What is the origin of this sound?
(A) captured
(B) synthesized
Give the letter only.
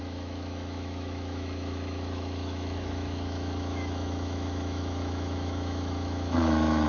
B